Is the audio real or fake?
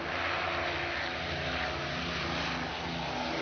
real